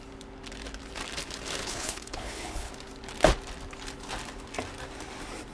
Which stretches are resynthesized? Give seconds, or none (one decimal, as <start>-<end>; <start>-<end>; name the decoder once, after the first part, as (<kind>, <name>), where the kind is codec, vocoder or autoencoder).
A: 1.6-2.7 (codec, HILCodec)